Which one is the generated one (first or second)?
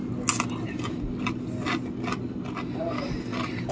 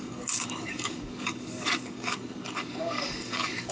second